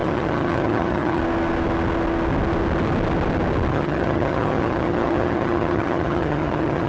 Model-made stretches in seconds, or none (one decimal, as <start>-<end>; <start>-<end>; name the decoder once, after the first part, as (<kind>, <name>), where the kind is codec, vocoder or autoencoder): 0.0-1.2 (vocoder, HiFi-GAN); 3.7-6.9